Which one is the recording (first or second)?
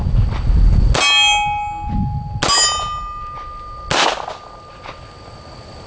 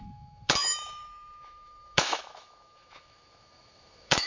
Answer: first